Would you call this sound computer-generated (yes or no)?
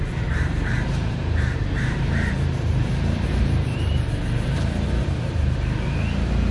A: yes